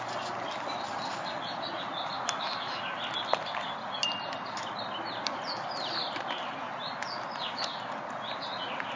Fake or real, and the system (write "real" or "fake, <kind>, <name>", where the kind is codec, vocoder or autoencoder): real